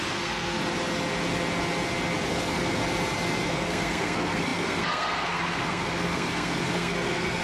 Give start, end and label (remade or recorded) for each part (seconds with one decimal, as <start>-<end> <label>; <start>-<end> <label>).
0.0-0.6 remade; 0.6-2.3 recorded; 2.3-2.8 remade; 2.8-3.5 recorded; 3.5-7.4 remade